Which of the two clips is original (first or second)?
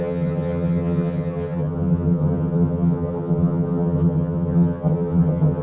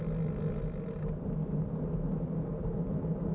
second